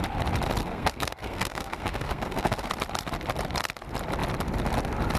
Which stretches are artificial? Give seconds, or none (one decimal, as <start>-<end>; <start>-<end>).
0.6-2.7